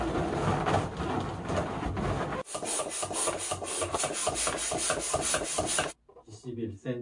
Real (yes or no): yes